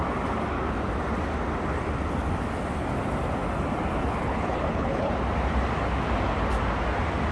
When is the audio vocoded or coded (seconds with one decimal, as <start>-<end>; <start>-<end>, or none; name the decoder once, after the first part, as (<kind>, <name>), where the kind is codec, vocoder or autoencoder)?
4.0-5.1 (codec, HILCodec)